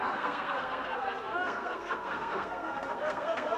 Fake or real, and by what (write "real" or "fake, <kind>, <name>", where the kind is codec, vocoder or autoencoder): fake, codec, SNAC